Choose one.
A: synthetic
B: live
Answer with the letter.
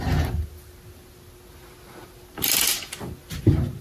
B